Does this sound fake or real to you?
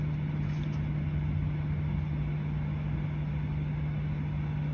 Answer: real